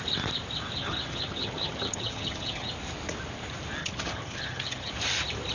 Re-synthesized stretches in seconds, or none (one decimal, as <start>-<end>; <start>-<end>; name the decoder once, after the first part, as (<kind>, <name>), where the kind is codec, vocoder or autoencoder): 0.8-2.7 (vocoder, HiFi-GAN); 3.8-4.9